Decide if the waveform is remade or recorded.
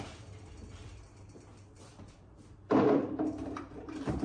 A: remade